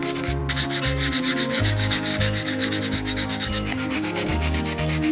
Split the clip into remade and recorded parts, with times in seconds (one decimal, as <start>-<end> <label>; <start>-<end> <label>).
0.0-0.4 remade; 0.4-1.2 recorded; 1.2-5.1 remade